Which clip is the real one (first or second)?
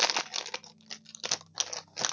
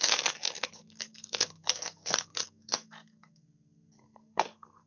first